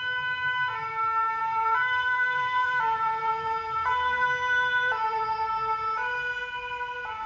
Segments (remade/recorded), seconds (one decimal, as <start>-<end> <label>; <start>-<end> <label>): 0.0-1.4 recorded; 1.4-5.5 remade; 5.5-7.3 recorded